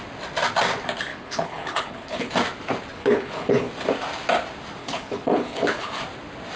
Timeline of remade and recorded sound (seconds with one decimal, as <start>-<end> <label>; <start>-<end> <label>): 0.0-1.1 recorded; 1.1-2.3 remade; 2.3-2.9 recorded; 2.9-3.7 remade; 3.7-4.8 recorded; 4.8-6.0 remade; 6.0-6.6 recorded